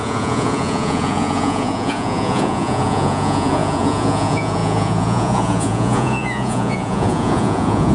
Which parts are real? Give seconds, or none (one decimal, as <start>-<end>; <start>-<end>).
none